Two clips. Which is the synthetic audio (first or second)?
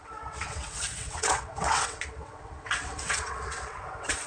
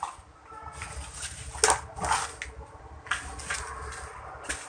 first